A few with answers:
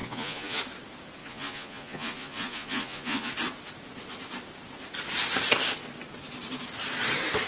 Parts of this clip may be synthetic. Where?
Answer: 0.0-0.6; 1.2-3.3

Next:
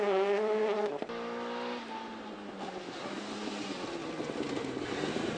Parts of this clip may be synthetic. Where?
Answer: none

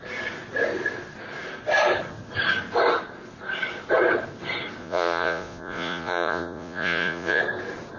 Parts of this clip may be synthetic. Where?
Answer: 4.8-7.4

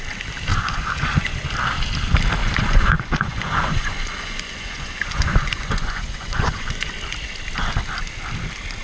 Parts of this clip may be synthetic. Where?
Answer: 0.5-1.4; 2.4-6.9

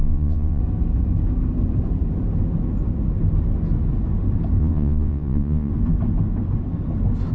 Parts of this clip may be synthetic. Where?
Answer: 0.0-0.6; 4.6-5.7